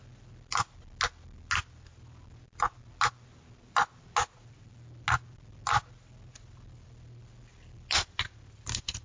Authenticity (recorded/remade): recorded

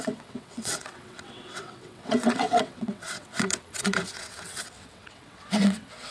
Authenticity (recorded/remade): remade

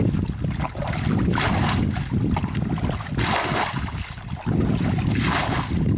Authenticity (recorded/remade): recorded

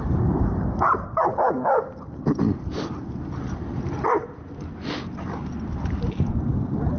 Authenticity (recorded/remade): recorded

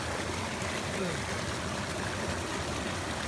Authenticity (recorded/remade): recorded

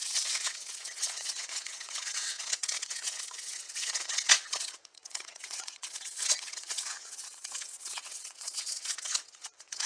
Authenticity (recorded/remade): remade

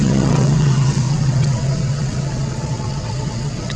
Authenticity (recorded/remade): remade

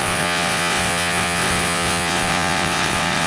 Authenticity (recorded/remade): remade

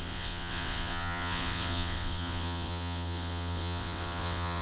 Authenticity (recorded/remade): remade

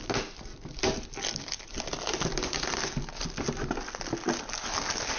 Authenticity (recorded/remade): recorded